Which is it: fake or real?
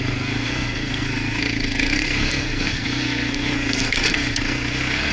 fake